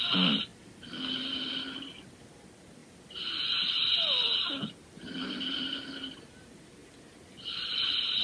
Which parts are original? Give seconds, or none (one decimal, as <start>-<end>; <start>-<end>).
0.0-8.2